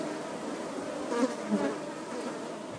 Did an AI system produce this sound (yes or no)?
no